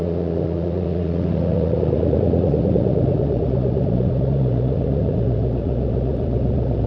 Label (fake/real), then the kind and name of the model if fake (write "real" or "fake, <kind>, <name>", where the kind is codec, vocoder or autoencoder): fake, vocoder, Vocos